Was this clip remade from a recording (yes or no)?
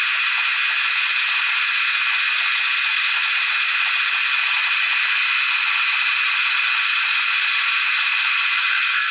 no